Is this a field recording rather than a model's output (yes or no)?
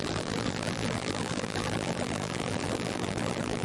no